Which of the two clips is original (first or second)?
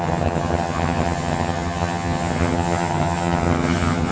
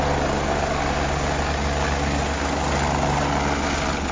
second